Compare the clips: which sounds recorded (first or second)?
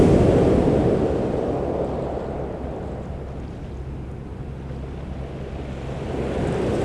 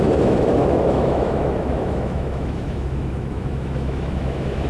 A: first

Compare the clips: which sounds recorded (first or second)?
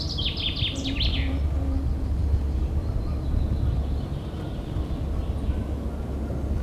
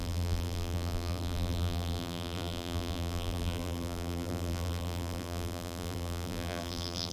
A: first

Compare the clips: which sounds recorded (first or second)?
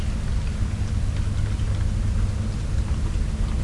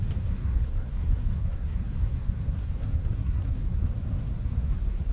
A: first